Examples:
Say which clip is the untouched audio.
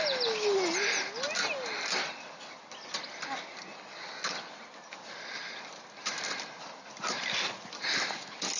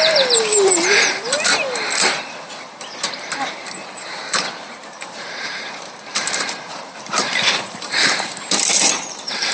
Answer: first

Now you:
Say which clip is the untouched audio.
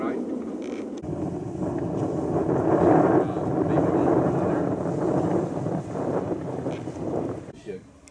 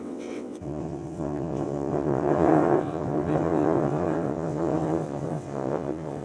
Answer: first